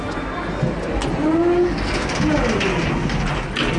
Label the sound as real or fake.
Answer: real